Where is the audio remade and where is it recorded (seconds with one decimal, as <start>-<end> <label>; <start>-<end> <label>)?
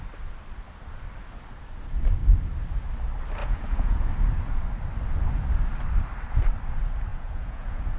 0.0-3.4 recorded; 3.4-4.3 remade; 4.3-7.1 recorded; 7.1-8.0 remade